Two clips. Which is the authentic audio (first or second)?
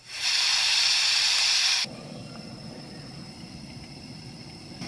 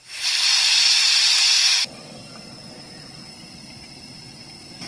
second